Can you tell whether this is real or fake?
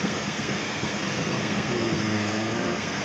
fake